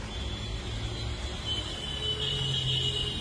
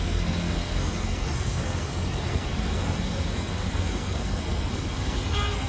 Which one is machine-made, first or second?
second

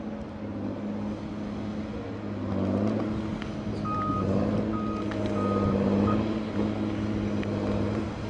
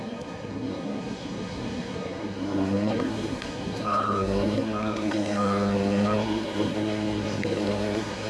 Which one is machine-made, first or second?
second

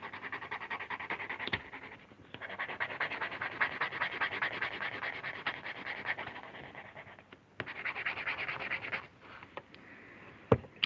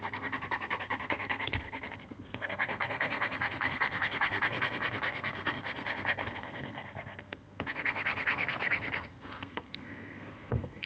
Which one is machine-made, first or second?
second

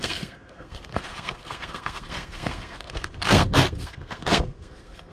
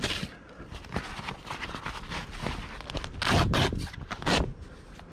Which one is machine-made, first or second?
first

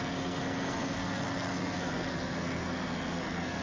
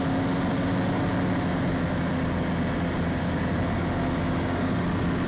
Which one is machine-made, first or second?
first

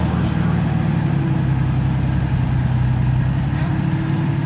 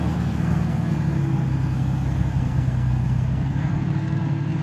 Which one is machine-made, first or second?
second